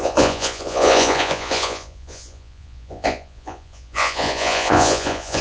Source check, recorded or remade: remade